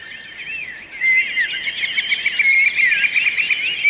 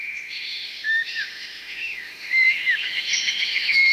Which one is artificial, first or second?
second